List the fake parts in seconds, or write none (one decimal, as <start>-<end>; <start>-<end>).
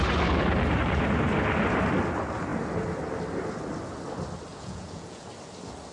4.5-5.3